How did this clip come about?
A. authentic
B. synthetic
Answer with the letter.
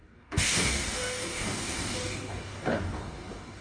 B